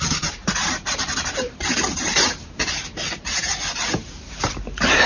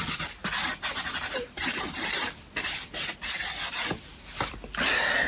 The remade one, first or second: first